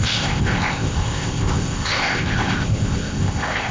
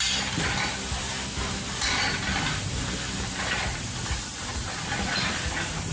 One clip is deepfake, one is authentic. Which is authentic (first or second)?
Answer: second